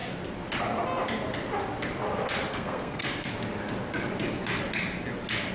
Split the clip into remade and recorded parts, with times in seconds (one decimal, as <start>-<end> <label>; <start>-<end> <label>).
0.0-2.5 recorded; 2.5-3.3 remade; 3.3-5.5 recorded